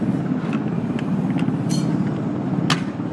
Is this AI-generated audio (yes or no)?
no